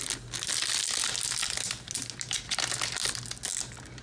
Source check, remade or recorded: recorded